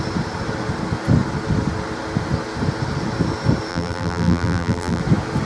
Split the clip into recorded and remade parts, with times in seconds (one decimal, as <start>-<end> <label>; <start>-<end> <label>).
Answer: 0.0-3.7 recorded; 3.7-5.0 remade; 5.0-5.4 recorded